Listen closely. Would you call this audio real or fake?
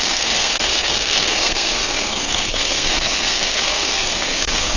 fake